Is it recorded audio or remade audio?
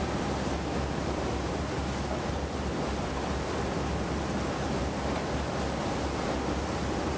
recorded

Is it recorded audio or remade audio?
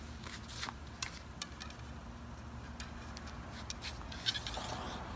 recorded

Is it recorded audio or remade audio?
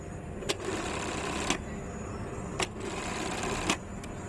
recorded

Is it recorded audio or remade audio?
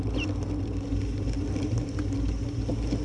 recorded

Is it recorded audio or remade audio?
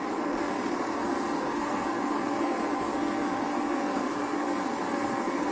remade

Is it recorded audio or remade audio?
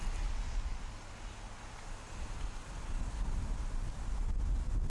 recorded